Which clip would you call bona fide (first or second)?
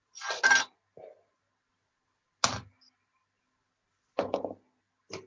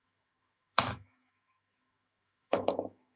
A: first